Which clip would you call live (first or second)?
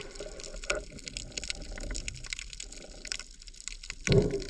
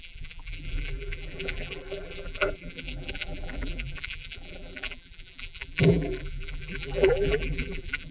first